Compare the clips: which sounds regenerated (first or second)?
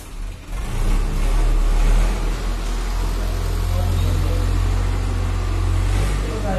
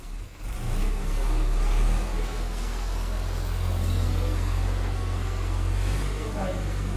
second